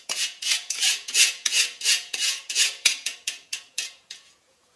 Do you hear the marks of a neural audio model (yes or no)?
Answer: yes